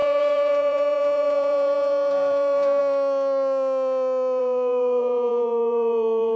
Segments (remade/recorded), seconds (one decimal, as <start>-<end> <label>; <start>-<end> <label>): 0.0-2.8 remade; 2.8-4.4 recorded; 4.4-6.4 remade